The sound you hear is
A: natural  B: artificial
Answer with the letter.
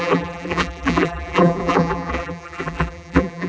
B